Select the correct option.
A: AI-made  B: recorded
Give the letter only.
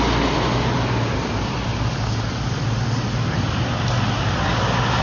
A